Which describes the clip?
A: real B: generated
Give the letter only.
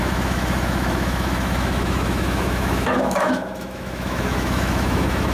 B